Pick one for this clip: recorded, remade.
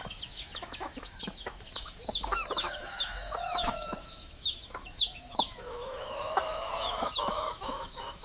remade